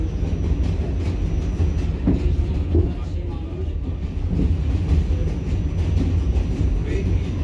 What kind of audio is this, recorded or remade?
recorded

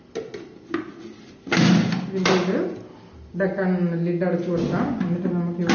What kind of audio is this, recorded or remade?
recorded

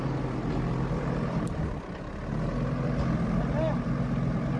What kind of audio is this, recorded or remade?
recorded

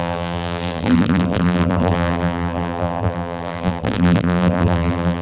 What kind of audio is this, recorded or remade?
remade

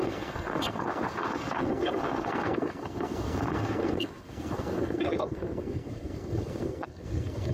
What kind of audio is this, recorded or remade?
remade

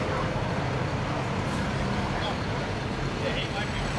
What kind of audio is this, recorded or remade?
recorded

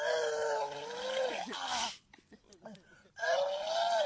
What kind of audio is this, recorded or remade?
recorded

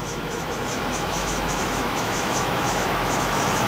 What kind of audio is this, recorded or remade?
remade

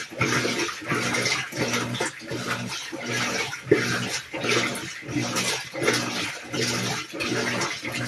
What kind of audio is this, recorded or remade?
recorded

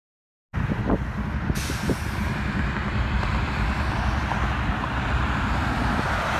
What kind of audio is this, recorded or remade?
recorded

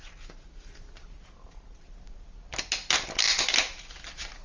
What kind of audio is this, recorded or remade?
recorded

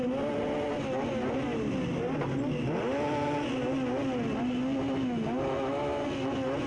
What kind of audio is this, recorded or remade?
recorded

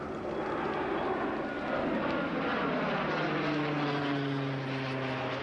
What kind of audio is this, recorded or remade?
recorded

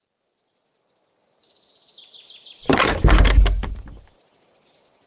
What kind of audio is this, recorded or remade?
recorded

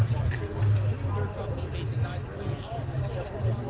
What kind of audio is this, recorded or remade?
recorded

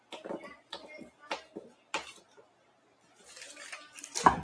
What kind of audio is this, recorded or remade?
recorded